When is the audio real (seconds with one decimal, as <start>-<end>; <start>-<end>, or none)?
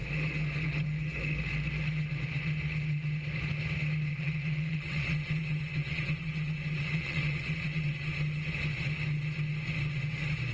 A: 0.0-4.1; 8.1-10.5